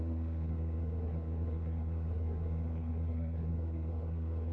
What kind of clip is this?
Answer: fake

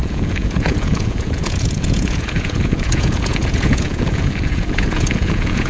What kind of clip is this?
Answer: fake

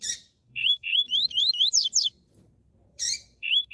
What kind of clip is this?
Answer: fake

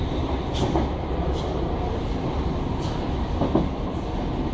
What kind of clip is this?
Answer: real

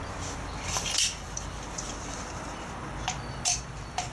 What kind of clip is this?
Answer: real